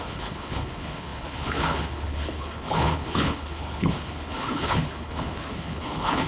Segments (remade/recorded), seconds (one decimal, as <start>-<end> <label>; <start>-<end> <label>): 0.0-6.3 remade